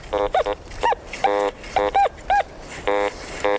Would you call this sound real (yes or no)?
no